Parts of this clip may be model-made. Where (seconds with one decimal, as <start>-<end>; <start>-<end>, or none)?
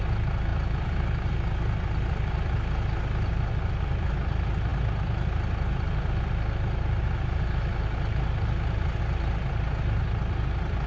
none